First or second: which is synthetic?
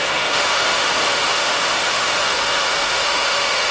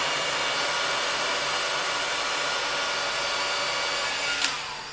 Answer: first